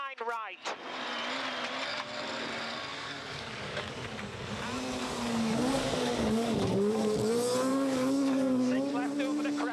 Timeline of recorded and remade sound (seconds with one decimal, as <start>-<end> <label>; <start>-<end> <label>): 0.0-2.9 recorded; 2.9-3.9 remade; 3.9-5.0 recorded; 5.0-7.3 remade; 7.3-7.7 recorded; 7.7-8.9 remade; 8.9-9.7 recorded